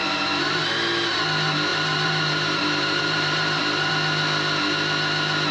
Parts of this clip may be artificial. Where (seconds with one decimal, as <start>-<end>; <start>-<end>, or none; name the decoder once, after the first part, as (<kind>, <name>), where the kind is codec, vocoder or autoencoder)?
0.0-0.6 (vocoder, BigVGAN v2); 1.7-3.9